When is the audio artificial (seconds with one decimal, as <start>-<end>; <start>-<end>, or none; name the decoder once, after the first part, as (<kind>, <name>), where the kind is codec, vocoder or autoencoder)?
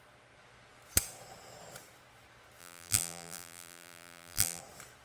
2.6-4.6 (vocoder, BigVGAN v2)